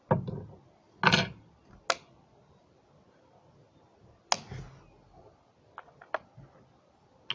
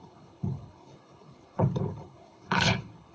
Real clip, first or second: first